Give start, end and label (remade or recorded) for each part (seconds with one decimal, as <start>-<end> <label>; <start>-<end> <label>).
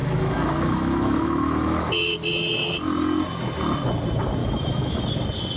0.0-1.9 remade; 1.9-4.4 recorded; 4.4-5.0 remade; 5.0-5.6 recorded